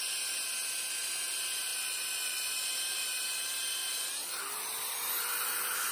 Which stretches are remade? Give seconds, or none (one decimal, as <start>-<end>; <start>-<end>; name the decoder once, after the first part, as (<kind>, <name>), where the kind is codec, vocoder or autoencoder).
3.8-4.4 (vocoder, BigVGAN v2)